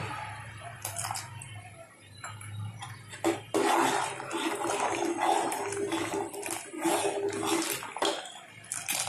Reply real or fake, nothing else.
real